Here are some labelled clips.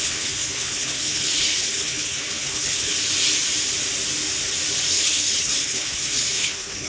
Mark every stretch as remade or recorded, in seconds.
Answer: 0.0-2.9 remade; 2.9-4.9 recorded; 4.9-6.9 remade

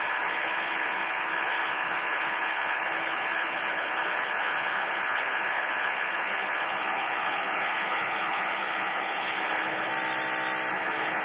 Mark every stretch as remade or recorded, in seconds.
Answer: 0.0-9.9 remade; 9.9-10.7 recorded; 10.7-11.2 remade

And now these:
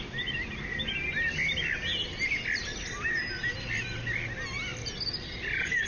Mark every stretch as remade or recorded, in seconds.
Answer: 0.0-5.9 recorded

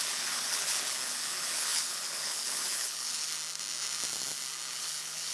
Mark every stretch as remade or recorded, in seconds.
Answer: 0.0-3.3 remade; 3.3-4.7 recorded; 4.7-5.3 remade